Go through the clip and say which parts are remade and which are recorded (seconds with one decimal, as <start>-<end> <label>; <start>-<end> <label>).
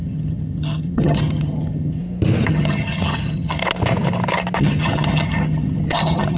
0.0-2.0 remade; 2.0-2.5 recorded; 2.5-3.6 remade; 3.6-4.6 recorded; 4.6-6.4 remade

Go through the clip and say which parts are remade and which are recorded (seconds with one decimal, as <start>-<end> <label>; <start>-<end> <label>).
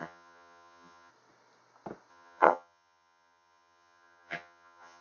0.0-1.1 remade; 1.1-2.1 recorded; 2.1-5.0 remade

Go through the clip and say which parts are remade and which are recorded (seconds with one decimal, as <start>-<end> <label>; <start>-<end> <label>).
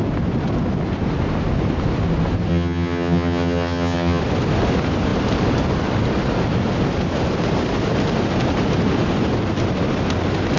0.0-2.5 recorded; 2.5-4.2 remade; 4.2-10.6 recorded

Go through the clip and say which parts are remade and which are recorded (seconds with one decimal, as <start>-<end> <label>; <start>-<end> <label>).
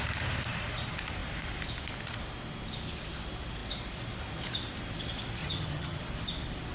0.0-5.4 recorded; 5.4-6.0 remade; 6.0-6.7 recorded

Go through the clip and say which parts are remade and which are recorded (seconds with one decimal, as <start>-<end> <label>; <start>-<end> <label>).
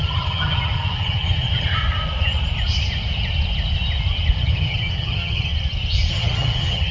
0.0-1.8 remade; 1.8-4.4 recorded; 4.4-5.5 remade; 5.5-6.1 recorded; 6.1-6.9 remade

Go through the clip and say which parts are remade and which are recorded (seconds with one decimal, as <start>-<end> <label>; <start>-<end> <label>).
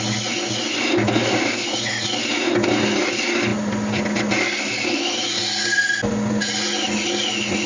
0.0-7.7 recorded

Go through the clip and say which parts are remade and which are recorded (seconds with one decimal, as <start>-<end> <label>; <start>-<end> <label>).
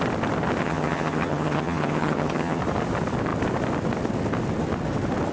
0.0-0.6 recorded; 0.6-2.6 remade; 2.6-5.3 recorded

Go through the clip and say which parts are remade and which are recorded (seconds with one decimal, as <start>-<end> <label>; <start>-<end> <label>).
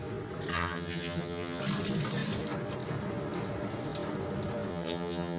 0.0-0.5 recorded; 0.5-1.6 remade; 1.6-4.7 recorded; 4.7-5.4 remade